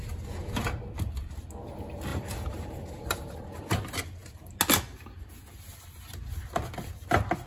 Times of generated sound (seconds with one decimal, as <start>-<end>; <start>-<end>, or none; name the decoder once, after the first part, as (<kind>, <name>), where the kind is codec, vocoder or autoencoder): 2.1-3.6 (vocoder, BigVGAN v2)

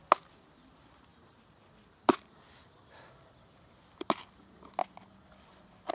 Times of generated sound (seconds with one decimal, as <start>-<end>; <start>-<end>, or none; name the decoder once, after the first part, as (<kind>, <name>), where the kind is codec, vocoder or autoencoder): 1.1-3.1 (vocoder, BigVGAN v2)

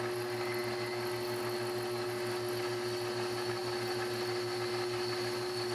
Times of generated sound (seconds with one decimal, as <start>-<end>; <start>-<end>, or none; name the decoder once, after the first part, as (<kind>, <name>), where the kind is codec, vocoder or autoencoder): none

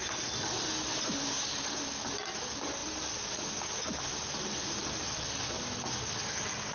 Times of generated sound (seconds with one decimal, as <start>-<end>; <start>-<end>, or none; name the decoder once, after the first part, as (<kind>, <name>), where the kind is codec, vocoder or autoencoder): 2.8-3.4 (vocoder, BigVGAN v2)

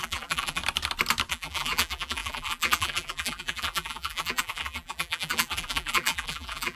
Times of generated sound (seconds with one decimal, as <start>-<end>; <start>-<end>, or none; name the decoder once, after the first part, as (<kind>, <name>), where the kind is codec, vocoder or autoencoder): 0.0-0.6 (vocoder, BigVGAN v2); 1.3-6.8